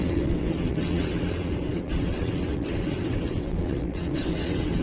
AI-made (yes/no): yes